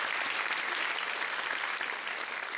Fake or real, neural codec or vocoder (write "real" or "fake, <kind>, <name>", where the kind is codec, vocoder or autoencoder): real